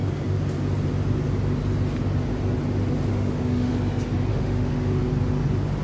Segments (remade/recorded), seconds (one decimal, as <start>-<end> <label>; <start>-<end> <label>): 0.0-3.1 recorded; 3.1-3.7 remade; 3.7-4.3 recorded; 4.3-5.0 remade; 5.0-5.8 recorded